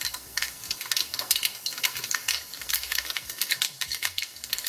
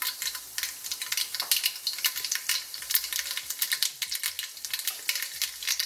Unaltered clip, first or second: second